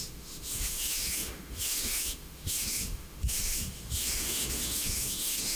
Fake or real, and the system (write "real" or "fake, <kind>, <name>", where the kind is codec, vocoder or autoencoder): fake, autoencoder, DAC-VAE